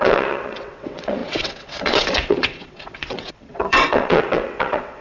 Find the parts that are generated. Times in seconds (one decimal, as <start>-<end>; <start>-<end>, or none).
0.0-5.0